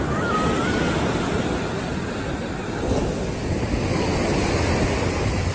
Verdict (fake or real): real